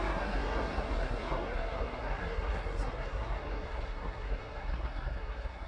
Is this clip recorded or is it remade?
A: remade